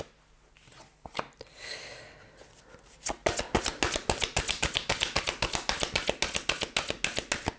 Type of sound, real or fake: real